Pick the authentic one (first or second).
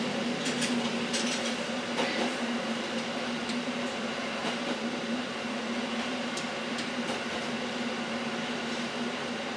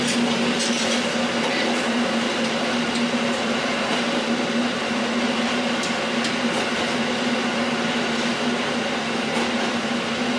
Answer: second